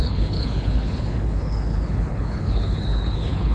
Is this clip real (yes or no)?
no